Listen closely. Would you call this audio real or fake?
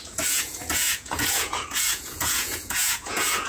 fake